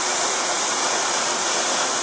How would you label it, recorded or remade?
remade